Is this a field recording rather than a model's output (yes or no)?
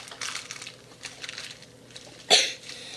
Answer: yes